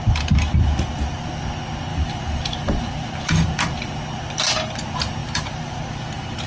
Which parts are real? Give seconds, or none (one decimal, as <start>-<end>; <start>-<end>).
0.0-1.9; 4.0-5.2